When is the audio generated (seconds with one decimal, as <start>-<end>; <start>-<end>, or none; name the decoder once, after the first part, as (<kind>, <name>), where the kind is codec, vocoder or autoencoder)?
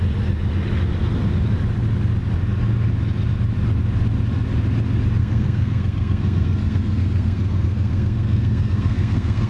5.2-9.5 (codec, SNAC)